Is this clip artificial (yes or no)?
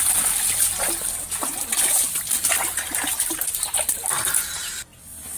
no